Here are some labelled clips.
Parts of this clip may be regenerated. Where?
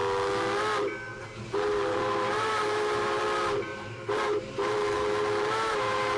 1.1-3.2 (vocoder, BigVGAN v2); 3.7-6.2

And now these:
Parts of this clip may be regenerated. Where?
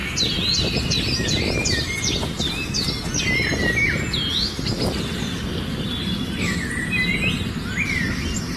none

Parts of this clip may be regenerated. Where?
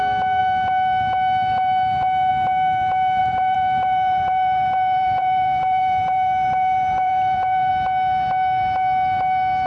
3.2-7.7 (vocoder, BigVGAN v2)